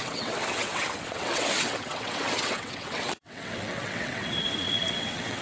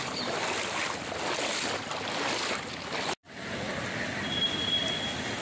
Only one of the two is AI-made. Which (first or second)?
first